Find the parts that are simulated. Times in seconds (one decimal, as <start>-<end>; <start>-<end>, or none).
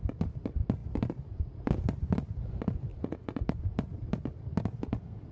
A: 2.9-3.6